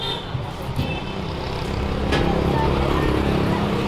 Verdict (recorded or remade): recorded